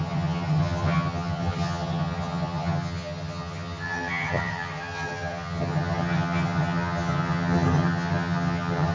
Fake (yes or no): yes